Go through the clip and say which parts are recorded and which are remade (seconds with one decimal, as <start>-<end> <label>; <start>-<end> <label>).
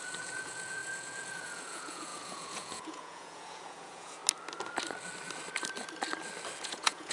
0.0-4.2 remade; 4.2-6.6 recorded; 6.6-7.1 remade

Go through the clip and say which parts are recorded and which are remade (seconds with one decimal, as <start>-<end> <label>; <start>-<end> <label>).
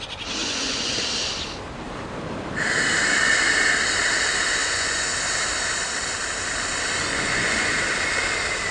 0.0-0.4 recorded; 0.4-1.0 remade; 1.0-4.6 recorded; 4.6-5.1 remade; 5.1-7.0 recorded; 7.0-7.7 remade; 7.7-8.7 recorded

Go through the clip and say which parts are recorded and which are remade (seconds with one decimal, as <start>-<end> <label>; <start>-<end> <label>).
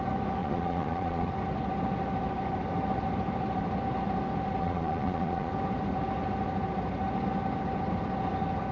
0.0-0.4 recorded; 0.4-1.3 remade; 1.3-4.6 recorded; 4.6-5.5 remade; 5.5-8.7 recorded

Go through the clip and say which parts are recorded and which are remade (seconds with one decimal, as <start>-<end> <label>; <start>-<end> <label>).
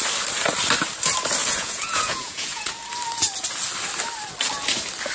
0.0-1.4 recorded; 1.4-2.7 remade; 2.7-5.1 recorded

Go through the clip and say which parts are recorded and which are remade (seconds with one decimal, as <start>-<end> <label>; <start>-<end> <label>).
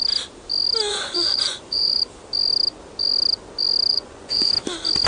0.0-0.9 recorded; 0.9-2.0 remade; 2.0-3.9 recorded; 3.9-4.5 remade; 4.5-5.1 recorded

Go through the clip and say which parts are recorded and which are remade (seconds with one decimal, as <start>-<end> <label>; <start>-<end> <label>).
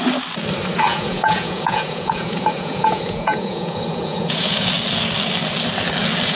0.0-0.9 recorded; 0.9-4.7 remade; 4.7-6.4 recorded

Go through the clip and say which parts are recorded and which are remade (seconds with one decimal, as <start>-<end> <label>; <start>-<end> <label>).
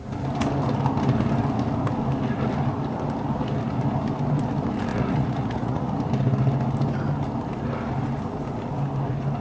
0.0-4.9 recorded; 4.9-5.9 remade; 5.9-9.4 recorded